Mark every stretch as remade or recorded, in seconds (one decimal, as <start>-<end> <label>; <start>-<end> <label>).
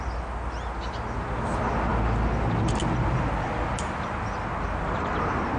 0.0-5.6 recorded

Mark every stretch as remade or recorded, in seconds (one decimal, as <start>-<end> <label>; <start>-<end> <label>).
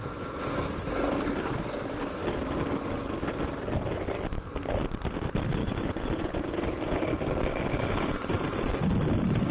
0.0-0.5 remade; 0.5-5.6 recorded; 5.6-7.0 remade; 7.0-9.5 recorded